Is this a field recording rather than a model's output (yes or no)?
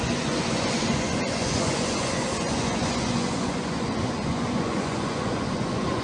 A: no